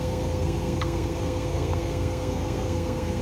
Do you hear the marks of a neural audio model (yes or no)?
yes